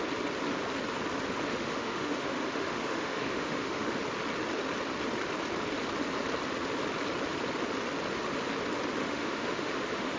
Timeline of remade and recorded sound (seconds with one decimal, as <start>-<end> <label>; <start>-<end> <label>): 0.0-1.5 recorded; 1.5-4.0 remade; 4.0-9.0 recorded; 9.0-10.2 remade